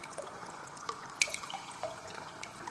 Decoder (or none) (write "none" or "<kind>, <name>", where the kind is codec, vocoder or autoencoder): vocoder, Vocos